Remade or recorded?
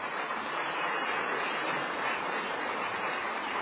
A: remade